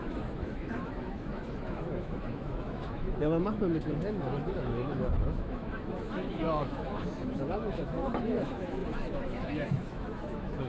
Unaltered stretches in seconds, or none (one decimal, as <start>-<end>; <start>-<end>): none